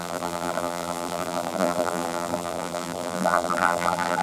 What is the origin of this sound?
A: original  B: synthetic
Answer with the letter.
B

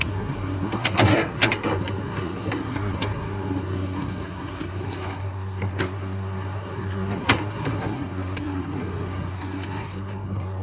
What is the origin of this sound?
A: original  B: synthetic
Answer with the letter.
B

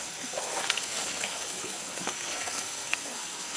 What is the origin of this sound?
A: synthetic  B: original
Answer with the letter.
A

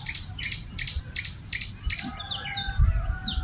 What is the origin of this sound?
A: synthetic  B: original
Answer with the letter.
B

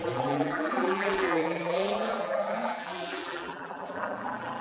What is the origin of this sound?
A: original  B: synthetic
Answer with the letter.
B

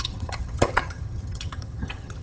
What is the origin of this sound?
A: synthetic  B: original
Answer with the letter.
A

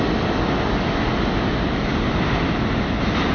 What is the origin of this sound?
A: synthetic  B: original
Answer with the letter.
B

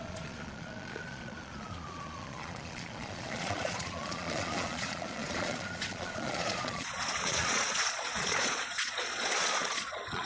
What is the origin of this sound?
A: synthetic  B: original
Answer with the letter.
A